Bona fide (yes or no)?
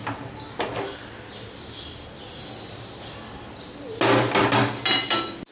yes